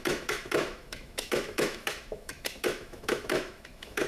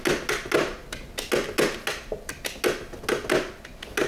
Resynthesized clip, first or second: first